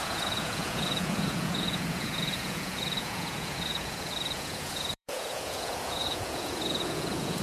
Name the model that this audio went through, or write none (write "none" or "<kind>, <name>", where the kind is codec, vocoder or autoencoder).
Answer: vocoder, Vocos